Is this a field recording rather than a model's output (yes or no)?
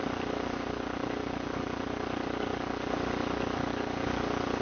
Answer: no